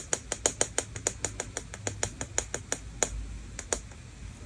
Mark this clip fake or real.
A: real